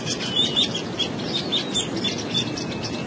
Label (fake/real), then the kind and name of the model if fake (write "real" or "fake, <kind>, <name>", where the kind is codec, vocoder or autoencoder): real